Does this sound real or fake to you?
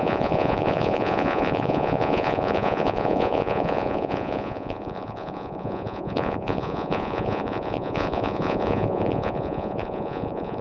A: fake